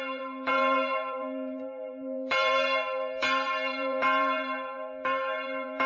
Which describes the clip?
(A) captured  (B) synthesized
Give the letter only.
B